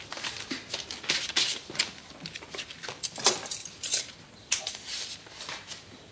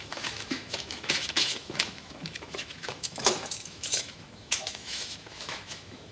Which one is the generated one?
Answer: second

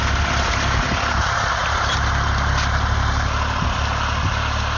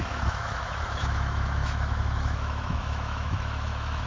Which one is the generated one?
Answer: second